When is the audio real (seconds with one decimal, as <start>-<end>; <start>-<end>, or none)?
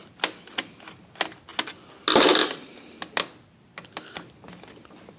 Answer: 0.0-5.2